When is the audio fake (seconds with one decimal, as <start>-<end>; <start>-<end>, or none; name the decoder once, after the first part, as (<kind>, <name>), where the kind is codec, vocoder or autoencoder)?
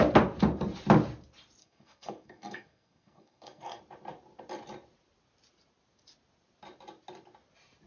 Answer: 1.6-3.8 (codec, SNAC)